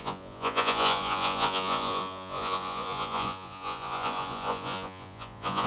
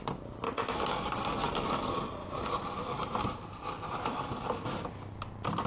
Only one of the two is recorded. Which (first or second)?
second